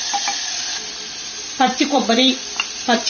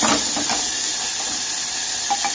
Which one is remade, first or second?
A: first